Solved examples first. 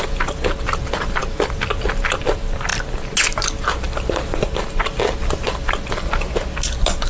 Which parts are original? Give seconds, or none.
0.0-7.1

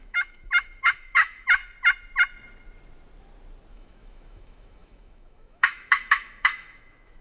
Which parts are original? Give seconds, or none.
1.6-3.7

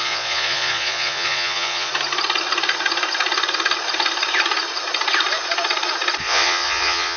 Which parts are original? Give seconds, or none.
1.9-6.2